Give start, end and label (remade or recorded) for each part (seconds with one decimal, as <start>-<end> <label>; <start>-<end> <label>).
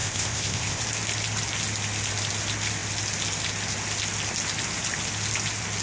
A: 0.0-0.8 remade; 0.8-5.8 recorded